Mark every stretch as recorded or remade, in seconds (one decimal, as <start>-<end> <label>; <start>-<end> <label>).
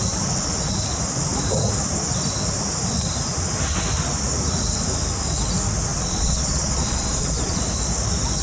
0.0-5.9 recorded; 5.9-7.6 remade; 7.6-8.4 recorded